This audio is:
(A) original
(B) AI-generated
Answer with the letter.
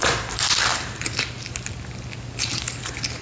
A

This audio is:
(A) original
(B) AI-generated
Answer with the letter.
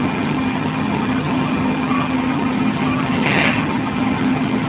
B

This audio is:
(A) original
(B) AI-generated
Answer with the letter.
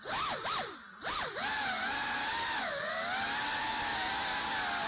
A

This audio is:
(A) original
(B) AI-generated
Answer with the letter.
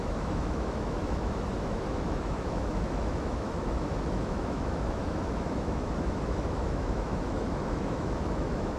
B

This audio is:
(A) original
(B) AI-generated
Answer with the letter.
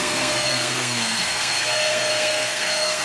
B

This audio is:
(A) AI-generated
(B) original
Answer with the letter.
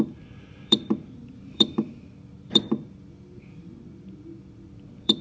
A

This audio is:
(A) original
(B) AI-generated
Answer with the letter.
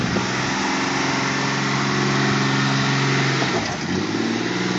A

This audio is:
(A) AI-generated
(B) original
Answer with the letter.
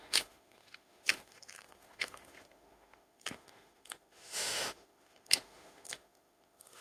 A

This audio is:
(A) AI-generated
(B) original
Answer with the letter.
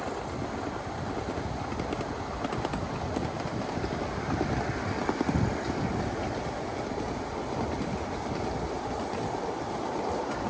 B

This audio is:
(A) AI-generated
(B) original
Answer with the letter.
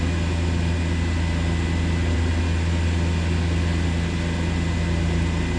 B